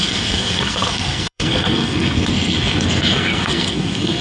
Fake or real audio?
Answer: fake